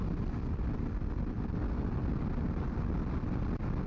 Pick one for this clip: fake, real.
real